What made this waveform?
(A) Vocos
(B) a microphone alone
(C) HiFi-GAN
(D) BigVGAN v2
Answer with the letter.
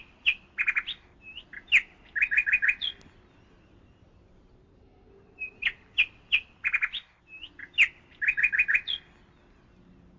B